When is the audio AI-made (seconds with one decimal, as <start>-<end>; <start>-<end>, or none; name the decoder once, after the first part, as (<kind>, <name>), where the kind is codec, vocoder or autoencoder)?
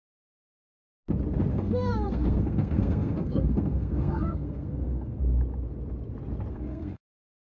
1.5-5.3 (codec, SNAC); 6.5-7.0